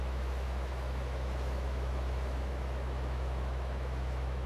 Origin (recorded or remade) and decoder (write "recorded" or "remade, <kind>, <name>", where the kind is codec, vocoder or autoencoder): remade, autoencoder, DAC-VAE